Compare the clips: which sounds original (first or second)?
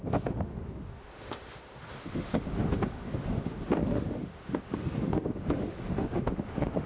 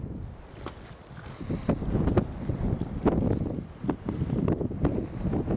second